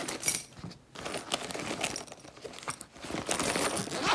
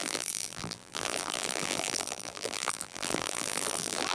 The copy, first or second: second